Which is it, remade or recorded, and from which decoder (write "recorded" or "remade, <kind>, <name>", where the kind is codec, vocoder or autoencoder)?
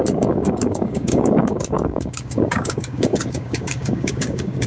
remade, codec, DAC